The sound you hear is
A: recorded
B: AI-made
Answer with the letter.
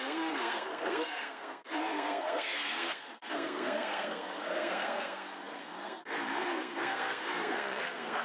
B